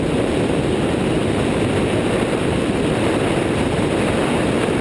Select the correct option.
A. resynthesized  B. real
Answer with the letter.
B